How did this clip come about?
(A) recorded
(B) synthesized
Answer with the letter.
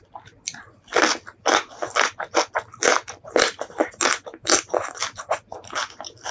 A